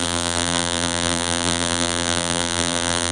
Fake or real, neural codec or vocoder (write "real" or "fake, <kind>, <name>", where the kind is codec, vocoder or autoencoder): fake, vocoder, BigVGAN v2